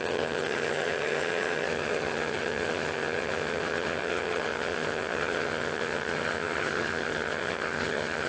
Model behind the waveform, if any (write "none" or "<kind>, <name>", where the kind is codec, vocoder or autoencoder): vocoder, HiFi-GAN